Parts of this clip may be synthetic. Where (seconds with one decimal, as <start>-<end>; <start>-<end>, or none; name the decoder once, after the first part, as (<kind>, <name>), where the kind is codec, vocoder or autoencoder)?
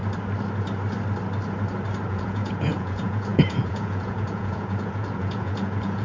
2.1-6.0 (vocoder, Vocos)